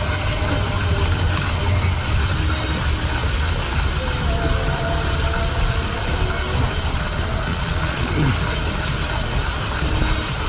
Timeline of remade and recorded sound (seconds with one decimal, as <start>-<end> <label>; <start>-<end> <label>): 0.0-7.5 recorded; 7.5-8.1 remade; 8.1-10.5 recorded